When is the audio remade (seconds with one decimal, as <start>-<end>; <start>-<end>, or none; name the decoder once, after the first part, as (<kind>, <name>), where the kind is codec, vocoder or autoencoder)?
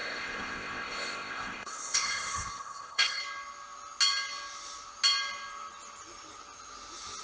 0.0-3.2 (codec, ZipCodec)